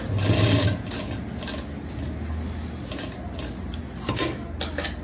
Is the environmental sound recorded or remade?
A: recorded